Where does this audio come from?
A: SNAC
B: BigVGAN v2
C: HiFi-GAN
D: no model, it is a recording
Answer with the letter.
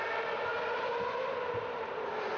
D